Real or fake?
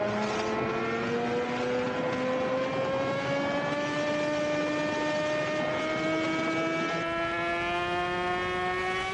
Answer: real